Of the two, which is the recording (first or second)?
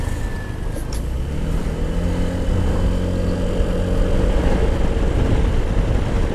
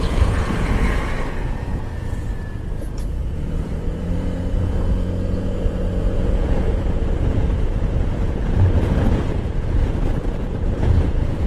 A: first